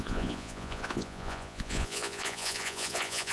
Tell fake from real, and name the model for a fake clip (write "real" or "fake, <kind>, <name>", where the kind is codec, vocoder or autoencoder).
fake, vocoder, Vocos